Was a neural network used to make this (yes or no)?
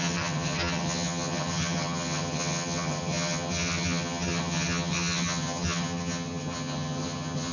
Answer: yes